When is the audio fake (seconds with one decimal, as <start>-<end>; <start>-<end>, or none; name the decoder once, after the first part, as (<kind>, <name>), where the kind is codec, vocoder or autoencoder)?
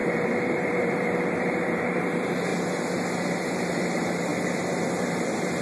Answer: 0.0-2.5 (vocoder, BigVGAN v2); 3.5-4.3; 5.1-5.6